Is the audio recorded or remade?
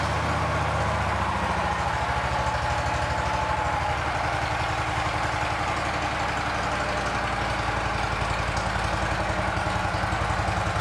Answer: recorded